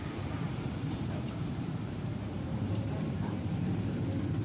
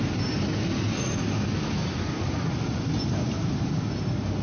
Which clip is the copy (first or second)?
first